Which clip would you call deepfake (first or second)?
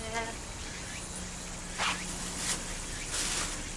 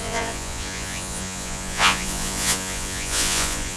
second